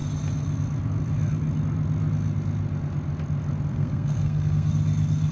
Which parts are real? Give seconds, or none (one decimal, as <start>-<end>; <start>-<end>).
0.0-3.7; 4.7-5.3